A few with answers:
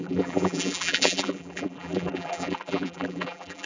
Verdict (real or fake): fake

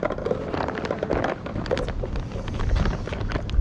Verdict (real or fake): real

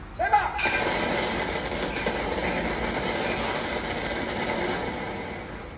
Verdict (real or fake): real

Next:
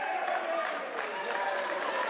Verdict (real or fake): fake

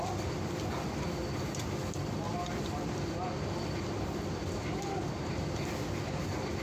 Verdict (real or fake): real